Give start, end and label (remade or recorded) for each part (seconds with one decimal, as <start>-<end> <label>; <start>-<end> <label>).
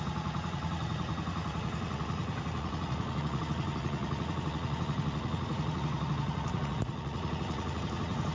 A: 0.0-8.3 remade